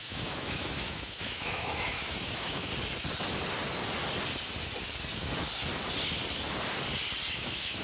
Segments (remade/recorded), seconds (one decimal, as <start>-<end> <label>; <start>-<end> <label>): 0.0-2.7 remade; 2.7-7.3 recorded; 7.3-7.8 remade